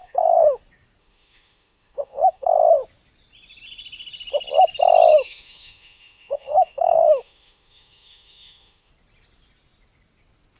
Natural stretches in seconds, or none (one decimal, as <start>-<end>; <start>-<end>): 0.6-1.0; 2.5-5.1; 8.9-10.6